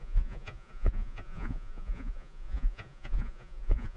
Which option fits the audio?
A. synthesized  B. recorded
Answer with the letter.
A